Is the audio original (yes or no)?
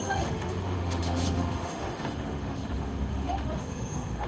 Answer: no